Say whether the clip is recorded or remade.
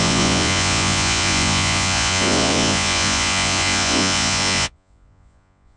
remade